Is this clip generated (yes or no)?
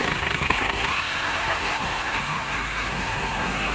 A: yes